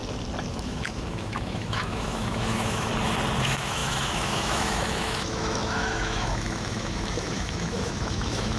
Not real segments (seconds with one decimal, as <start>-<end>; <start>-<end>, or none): 0.5-2.9; 3.4-8.6